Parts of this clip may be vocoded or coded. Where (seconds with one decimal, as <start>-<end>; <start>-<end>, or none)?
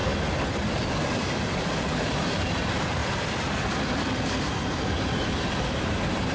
1.1-3.0; 4.9-6.3